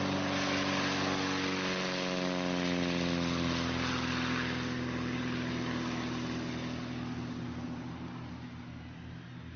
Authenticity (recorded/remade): recorded